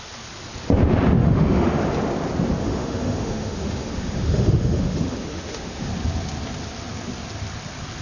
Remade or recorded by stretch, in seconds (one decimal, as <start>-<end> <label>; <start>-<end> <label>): 0.0-1.2 recorded; 1.2-1.8 remade; 1.8-2.6 recorded; 2.6-5.9 remade; 5.9-8.0 recorded

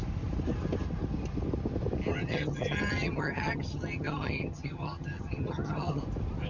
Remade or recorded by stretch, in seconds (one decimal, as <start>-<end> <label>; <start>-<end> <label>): 0.0-2.1 recorded; 2.1-6.0 remade; 6.0-6.5 recorded